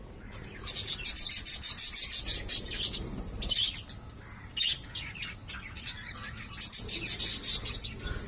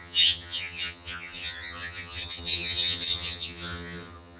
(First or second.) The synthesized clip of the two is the second